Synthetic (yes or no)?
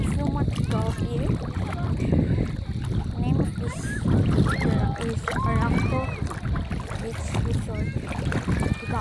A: no